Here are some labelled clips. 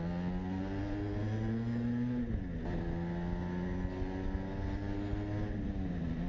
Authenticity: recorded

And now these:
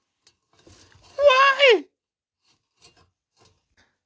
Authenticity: recorded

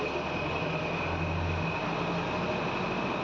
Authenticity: recorded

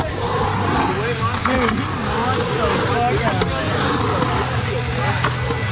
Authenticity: recorded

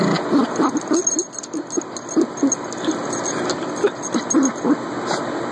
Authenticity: recorded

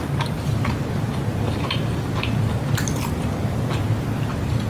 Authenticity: recorded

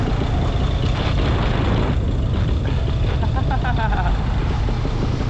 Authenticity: recorded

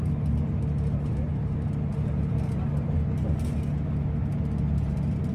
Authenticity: recorded